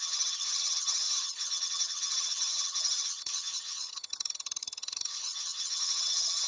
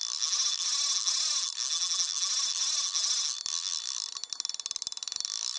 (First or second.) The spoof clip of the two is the first